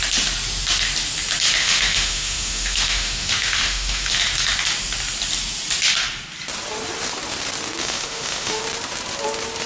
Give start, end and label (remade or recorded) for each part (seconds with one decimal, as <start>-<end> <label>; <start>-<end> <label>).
0.0-1.6 recorded; 1.6-4.2 remade; 4.2-7.8 recorded; 7.8-8.6 remade; 8.6-9.7 recorded